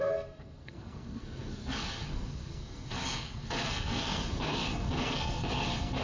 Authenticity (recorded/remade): remade